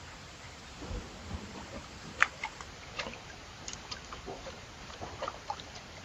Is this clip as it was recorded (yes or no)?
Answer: no